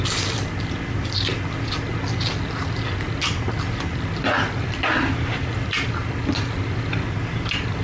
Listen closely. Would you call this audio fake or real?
real